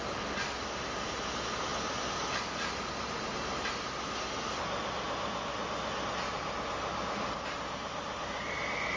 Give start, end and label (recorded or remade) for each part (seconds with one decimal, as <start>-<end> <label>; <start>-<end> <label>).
0.0-9.0 recorded